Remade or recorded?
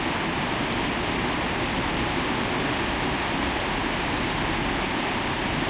recorded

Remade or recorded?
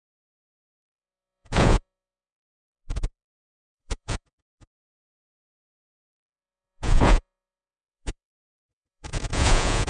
remade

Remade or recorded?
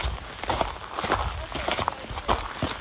recorded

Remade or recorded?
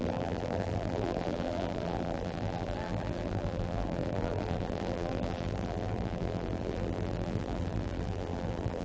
remade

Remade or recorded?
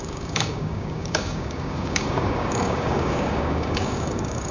remade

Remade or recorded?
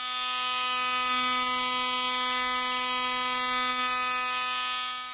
recorded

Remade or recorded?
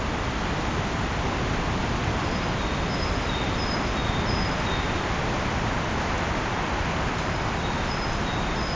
recorded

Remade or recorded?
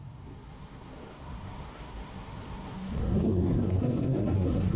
remade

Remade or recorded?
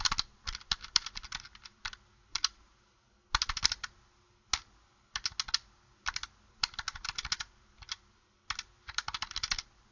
recorded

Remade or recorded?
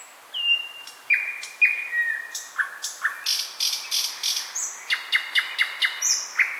recorded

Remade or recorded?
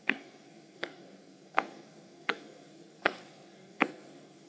remade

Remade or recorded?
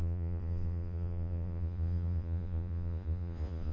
remade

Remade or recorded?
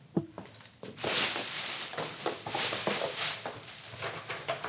remade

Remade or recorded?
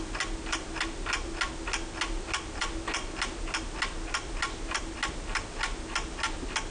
recorded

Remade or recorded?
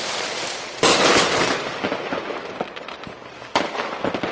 recorded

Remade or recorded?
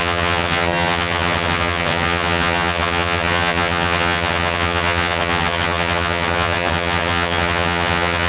remade